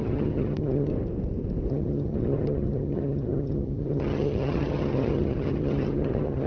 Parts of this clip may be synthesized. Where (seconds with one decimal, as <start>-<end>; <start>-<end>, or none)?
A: 0.0-0.9; 1.7-6.5